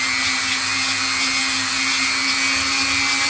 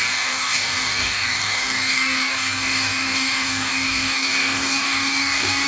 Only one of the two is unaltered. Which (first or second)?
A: first